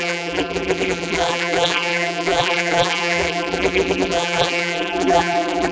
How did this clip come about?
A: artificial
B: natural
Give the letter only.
A